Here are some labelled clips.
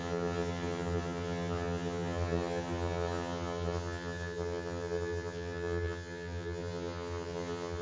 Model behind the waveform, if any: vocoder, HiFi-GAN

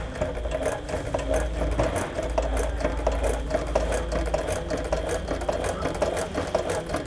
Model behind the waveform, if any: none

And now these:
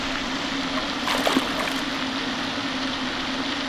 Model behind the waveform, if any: none